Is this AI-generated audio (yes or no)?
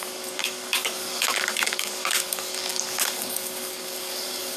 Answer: yes